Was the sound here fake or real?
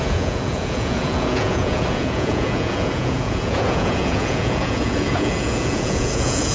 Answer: fake